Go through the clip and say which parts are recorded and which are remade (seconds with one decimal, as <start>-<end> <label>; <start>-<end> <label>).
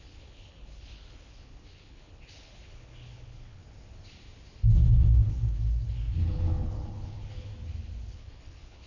0.0-3.6 remade; 3.6-5.3 recorded; 5.3-7.5 remade; 7.5-8.1 recorded; 8.1-8.9 remade